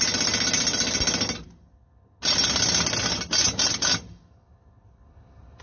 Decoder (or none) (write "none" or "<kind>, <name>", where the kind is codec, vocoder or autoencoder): none